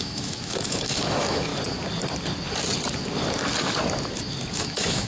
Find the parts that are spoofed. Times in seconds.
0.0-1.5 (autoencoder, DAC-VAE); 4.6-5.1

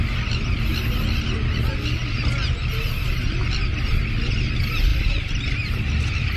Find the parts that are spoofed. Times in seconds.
none

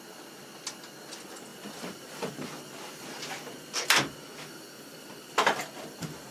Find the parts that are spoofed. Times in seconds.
1.5-2.3 (vocoder, BigVGAN v2)